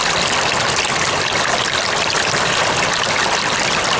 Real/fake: real